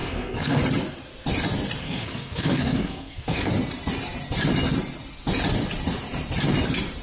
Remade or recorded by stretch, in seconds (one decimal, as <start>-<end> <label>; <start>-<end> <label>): 0.0-0.6 remade; 0.6-1.8 recorded; 1.8-3.5 remade; 3.5-7.0 recorded